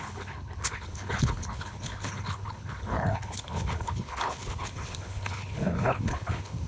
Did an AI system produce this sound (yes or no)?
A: yes